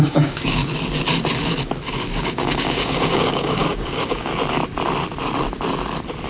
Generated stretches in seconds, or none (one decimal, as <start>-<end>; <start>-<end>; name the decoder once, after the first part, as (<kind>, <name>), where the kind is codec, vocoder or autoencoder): 0.0-0.6 (codec, DAC); 1.9-4.3

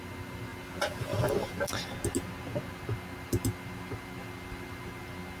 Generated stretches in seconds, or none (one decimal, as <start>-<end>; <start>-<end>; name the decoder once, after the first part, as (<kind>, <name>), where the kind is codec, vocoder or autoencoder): none

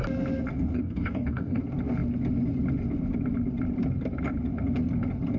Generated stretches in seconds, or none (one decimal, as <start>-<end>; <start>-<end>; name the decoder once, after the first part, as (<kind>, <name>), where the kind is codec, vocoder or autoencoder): 0.7-1.6 (codec, DAC)

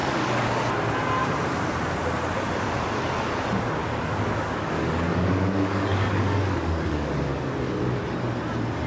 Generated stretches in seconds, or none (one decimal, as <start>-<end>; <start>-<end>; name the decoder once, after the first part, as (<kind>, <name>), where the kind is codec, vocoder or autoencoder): 0.0-0.7 (codec, DAC); 3.8-7.8

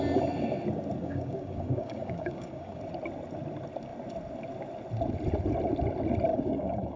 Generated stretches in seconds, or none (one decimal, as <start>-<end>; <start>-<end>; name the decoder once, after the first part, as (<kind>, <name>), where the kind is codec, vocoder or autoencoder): 1.0-2.8 (codec, DAC); 6.3-7.0